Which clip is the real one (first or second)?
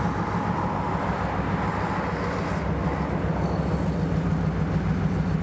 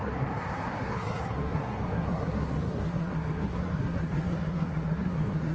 first